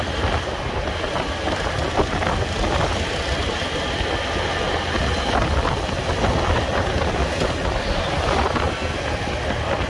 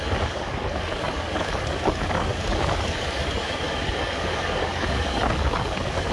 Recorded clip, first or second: first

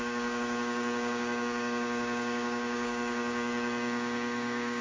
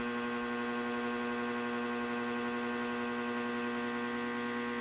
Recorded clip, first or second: second